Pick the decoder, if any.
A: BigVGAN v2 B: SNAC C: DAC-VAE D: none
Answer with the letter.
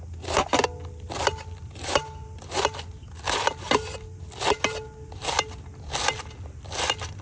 D